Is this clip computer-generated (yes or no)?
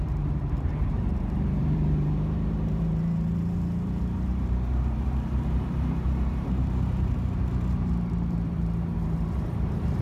yes